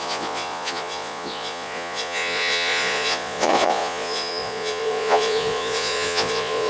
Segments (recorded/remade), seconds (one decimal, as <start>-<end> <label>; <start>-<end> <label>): 0.0-6.7 remade